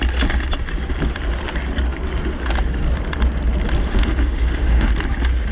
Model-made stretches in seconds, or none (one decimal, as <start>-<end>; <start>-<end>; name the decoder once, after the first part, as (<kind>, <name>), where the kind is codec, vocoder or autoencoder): 3.8-4.9 (autoencoder, DAC-VAE)